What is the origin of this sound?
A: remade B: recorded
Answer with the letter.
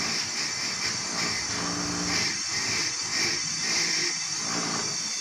B